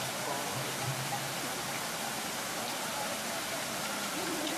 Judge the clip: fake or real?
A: real